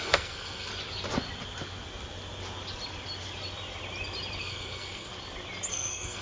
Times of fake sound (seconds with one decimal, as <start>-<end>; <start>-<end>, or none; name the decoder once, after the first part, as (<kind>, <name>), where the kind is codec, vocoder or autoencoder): 0.0-0.7 (codec, SNAC); 4.4-5.1; 5.7-6.2